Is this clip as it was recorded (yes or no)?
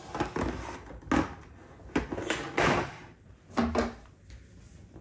yes